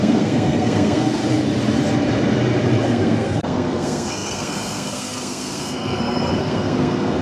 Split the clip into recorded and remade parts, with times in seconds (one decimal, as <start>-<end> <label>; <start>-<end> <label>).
0.0-1.2 remade; 1.2-2.9 recorded; 2.9-7.2 remade